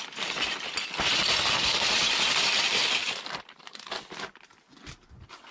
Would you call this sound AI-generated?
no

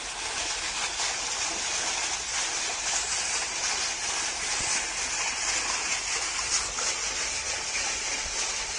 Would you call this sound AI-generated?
no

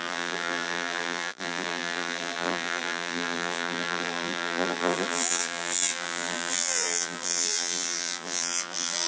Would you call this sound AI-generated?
yes